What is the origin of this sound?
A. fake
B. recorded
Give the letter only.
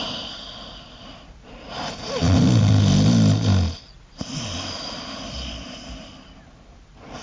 B